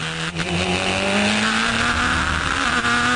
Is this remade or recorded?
recorded